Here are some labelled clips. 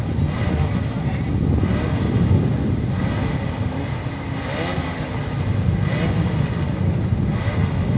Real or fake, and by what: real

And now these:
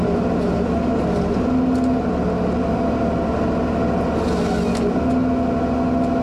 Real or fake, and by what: real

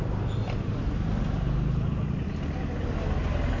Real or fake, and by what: real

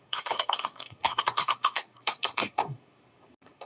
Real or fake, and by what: fake, codec, SNAC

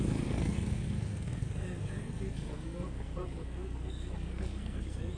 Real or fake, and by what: fake, codec, SNAC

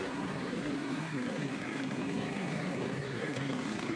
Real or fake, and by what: fake, codec, SNAC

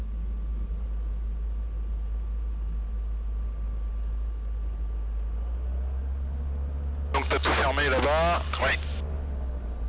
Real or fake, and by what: real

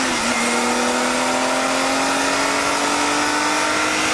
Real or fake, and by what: real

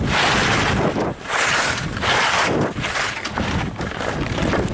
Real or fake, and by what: real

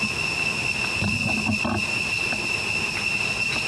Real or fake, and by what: real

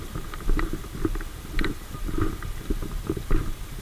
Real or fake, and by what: real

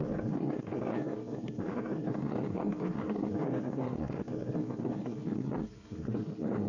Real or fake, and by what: fake, codec, SNAC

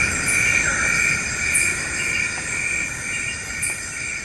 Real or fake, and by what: real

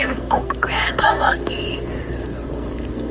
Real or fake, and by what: fake, codec, SNAC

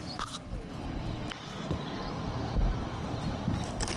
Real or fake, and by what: real